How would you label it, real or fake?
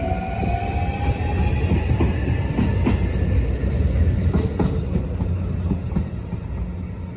real